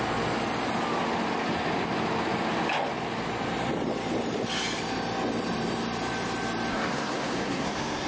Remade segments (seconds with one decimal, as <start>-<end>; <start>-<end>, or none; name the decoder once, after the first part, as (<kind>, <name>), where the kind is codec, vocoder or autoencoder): 6.7-8.1 (codec, SNAC)